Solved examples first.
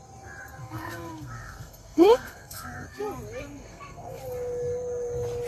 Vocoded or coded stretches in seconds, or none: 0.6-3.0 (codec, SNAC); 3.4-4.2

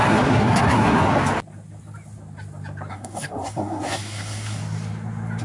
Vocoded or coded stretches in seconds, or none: 0.0-1.1 (codec, SNAC); 2.9-4.6

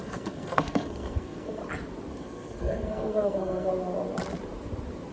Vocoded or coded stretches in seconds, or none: 0.0-1.6 (codec, SNAC); 2.1-3.7